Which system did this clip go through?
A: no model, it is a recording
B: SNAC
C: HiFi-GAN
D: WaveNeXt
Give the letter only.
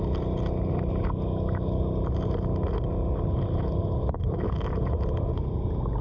A